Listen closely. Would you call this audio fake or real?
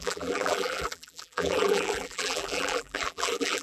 fake